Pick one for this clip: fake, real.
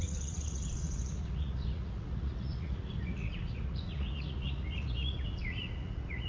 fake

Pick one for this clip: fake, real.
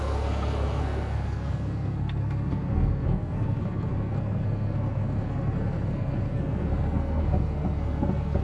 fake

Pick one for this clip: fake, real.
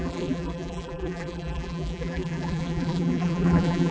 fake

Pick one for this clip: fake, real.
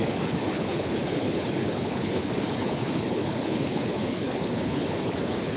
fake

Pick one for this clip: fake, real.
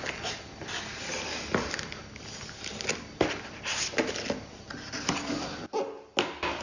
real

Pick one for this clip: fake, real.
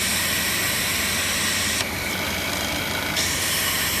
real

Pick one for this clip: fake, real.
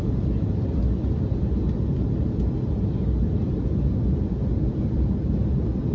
real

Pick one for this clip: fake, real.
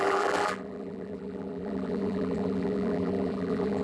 fake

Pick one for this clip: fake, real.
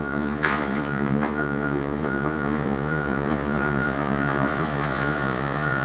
fake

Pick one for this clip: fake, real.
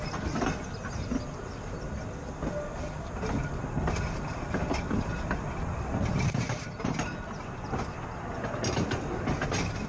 real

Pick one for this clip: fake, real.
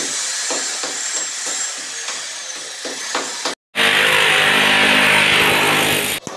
real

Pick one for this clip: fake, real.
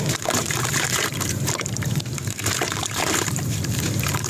fake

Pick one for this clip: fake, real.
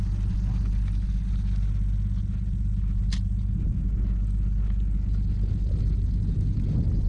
real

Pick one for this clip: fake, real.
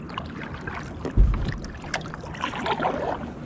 real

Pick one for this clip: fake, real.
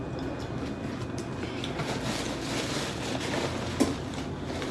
real